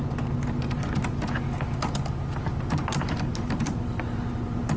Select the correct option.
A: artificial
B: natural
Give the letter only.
B